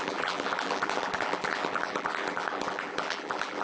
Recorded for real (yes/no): no